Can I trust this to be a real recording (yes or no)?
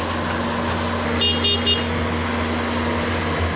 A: yes